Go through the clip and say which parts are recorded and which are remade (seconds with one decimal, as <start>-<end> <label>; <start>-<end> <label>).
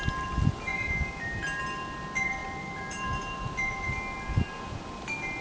0.0-2.4 recorded; 2.4-3.7 remade; 3.7-5.4 recorded